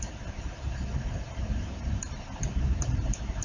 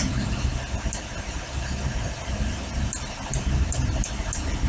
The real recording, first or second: second